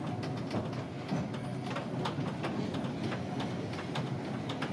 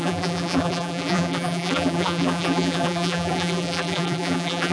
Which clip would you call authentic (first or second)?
first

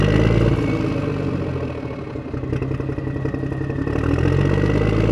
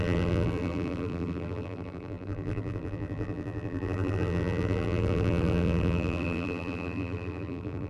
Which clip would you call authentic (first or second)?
first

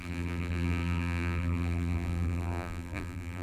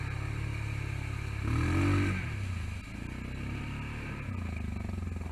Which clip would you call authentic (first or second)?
second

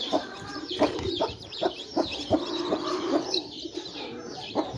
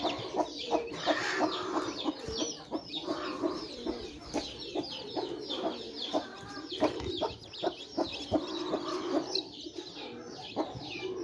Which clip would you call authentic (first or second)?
second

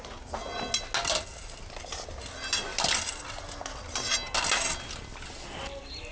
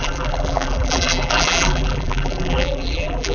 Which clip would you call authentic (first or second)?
first